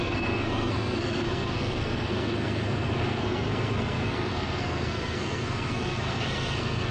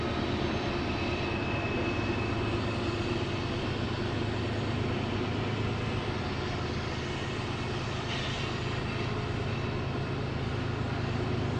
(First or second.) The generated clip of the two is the first